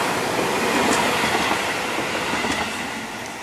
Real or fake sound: real